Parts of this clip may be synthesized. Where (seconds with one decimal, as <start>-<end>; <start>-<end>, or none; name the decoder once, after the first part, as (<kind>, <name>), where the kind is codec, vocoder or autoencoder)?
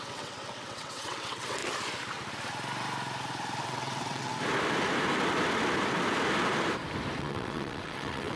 0.0-1.6 (vocoder, WaveNeXt); 3.6-4.3; 7.2-8.4